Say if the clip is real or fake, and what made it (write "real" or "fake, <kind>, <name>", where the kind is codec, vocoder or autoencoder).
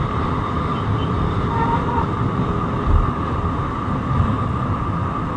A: real